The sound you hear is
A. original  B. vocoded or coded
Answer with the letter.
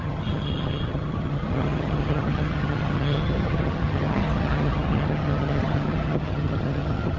B